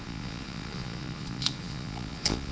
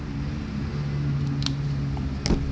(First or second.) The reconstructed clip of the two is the first